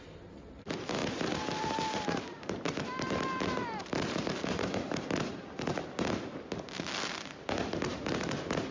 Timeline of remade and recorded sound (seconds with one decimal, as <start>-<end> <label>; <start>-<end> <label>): 0.0-1.0 recorded; 1.0-5.6 remade; 5.6-7.9 recorded; 7.9-8.7 remade